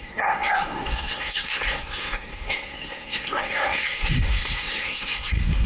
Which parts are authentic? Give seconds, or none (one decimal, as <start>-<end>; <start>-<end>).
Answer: none